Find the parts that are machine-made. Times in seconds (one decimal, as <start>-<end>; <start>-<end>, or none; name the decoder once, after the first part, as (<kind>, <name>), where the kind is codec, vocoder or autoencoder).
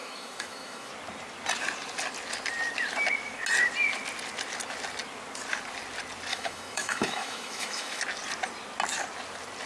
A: 0.0-0.9 (autoencoder, DAC-VAE); 6.3-8.0